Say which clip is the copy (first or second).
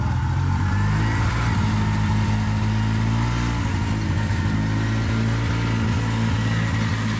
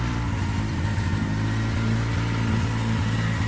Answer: second